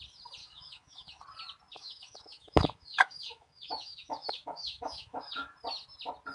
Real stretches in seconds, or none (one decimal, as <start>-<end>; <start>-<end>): 0.0-0.4; 1.2-1.7; 5.5-6.3